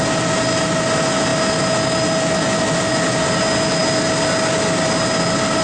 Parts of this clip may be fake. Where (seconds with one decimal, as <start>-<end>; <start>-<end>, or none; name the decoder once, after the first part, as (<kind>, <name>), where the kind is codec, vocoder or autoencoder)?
none